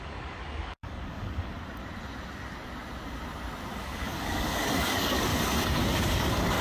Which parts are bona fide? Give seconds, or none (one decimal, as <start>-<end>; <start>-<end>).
1.5-3.8; 5.3-6.0